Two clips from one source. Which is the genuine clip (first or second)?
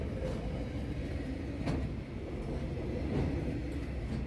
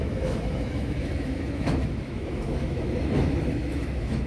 first